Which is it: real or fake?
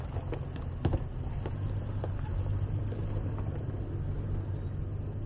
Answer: real